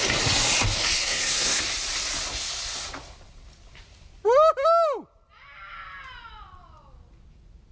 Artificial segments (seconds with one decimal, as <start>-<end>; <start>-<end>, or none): 1.0-1.6

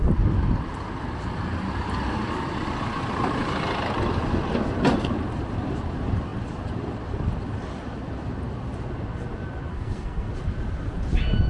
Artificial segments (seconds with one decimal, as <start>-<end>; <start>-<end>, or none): 9.7-10.3

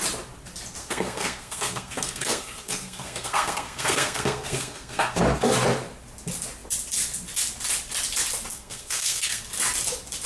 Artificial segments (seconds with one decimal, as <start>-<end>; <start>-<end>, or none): 0.8-5.2; 8.5-9.4